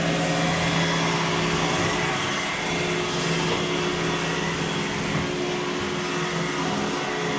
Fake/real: real